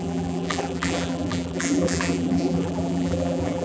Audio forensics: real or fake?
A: fake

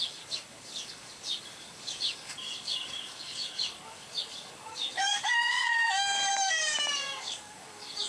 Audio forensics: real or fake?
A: fake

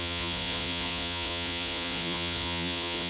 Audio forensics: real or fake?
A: fake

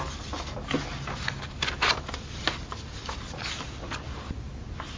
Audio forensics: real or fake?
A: real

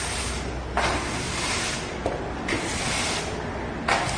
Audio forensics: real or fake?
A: real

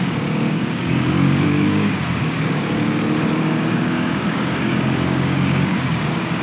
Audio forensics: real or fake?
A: fake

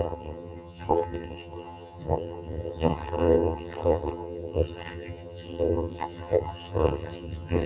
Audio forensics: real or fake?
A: fake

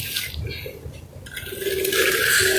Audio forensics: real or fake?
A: real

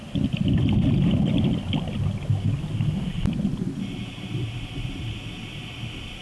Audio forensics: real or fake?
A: real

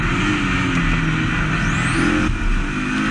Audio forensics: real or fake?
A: real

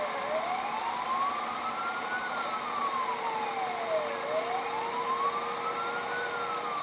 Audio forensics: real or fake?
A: real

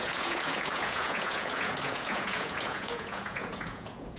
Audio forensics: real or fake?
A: fake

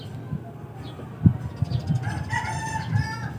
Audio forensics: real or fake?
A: real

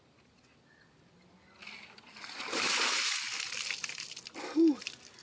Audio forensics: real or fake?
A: real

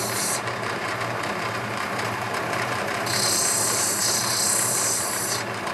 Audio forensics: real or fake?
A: fake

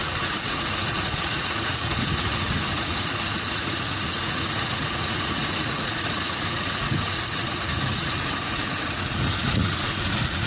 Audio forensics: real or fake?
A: fake